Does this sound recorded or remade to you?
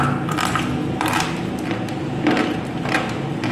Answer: recorded